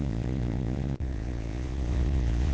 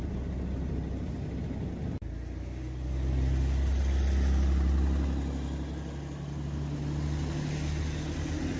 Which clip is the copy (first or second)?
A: first